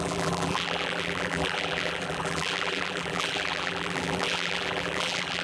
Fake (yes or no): yes